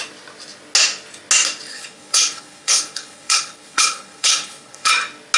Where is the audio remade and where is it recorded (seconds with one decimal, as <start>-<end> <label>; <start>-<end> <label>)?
0.0-1.7 recorded; 1.7-4.9 remade; 4.9-5.4 recorded